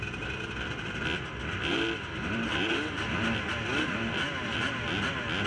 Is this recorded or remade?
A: recorded